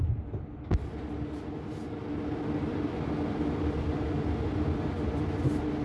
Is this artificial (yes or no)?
no